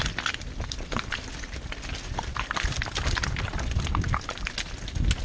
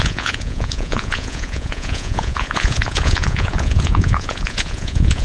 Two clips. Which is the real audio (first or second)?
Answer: first